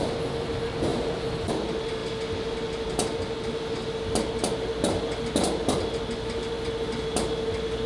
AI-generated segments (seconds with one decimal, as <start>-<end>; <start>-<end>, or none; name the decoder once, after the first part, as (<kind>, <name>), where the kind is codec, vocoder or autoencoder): 0.9-1.5 (vocoder, BigVGAN v2)